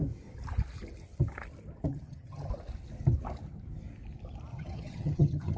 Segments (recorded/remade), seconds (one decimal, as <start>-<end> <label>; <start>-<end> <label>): 0.0-1.9 recorded; 1.9-2.5 remade; 2.5-4.5 recorded; 4.5-5.6 remade